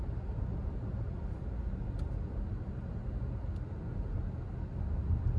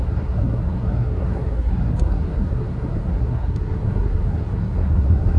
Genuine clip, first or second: first